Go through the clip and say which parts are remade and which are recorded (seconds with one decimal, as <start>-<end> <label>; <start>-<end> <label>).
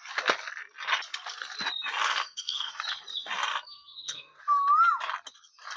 0.0-2.0 recorded; 2.0-2.7 remade; 2.7-3.5 recorded; 3.5-4.4 remade; 4.4-5.8 recorded